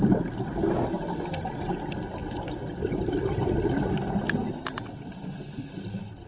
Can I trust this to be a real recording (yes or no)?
yes